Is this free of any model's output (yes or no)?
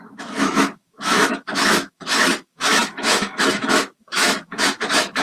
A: no